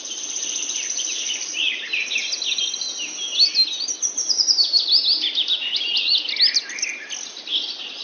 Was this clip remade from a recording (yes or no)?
no